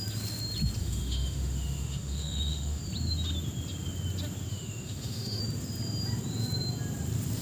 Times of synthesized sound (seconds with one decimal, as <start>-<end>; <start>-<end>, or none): 0.8-2.8; 4.5-5.4